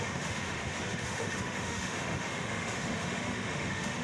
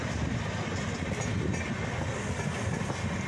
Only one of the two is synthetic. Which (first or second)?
first